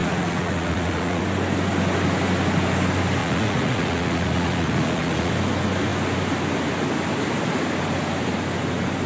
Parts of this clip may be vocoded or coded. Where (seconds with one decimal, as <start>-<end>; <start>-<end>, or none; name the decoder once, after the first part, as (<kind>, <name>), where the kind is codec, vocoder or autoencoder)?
0.0-1.2 (vocoder, Vocos); 3.2-5.3